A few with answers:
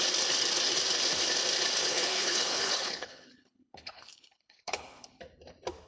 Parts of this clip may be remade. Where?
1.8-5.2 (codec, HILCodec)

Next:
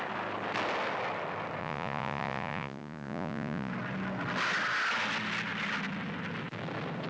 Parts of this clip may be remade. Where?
1.6-3.7 (vocoder, Vocos)